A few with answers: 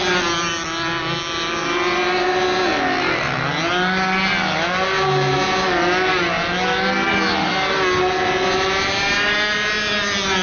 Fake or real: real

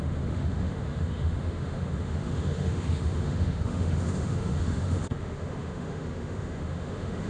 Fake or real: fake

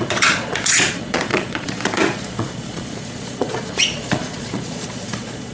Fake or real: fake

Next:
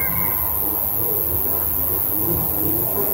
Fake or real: real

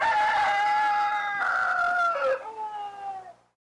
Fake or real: real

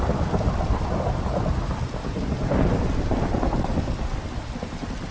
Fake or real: real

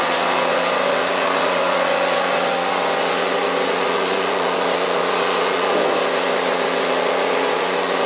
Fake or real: fake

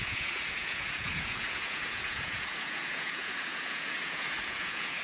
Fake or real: fake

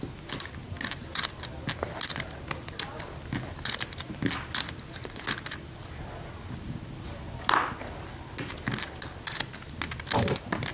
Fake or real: real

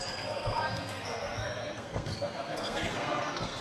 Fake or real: fake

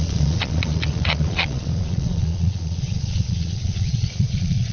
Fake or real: fake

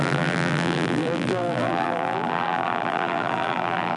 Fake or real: fake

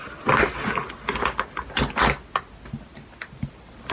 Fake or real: real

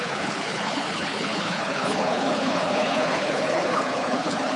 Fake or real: fake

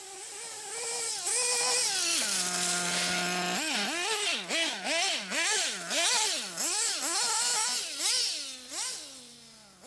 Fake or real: real